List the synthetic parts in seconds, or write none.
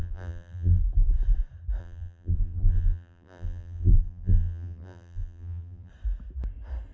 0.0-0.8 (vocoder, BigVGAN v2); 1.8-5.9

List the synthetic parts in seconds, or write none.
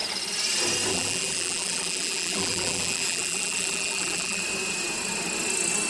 0.9-4.4 (vocoder, BigVGAN v2)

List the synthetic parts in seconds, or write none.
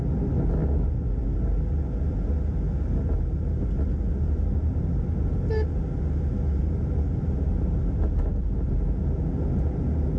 6.6-8.2 (vocoder, BigVGAN v2)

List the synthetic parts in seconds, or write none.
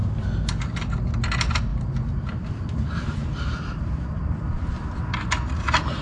1.7-5.0 (vocoder, BigVGAN v2)